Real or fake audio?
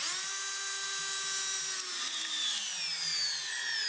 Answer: real